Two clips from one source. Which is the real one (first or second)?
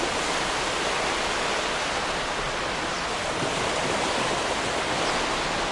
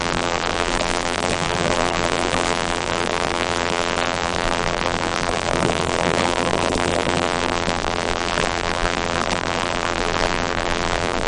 first